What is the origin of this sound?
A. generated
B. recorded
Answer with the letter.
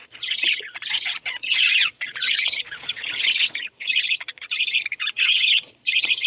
A